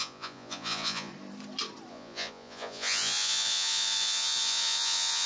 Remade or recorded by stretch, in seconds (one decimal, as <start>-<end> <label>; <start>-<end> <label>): 0.0-1.1 remade; 1.1-1.9 recorded; 1.9-5.3 remade